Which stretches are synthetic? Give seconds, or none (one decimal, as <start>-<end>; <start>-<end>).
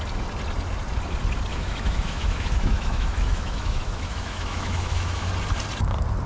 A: 1.5-5.3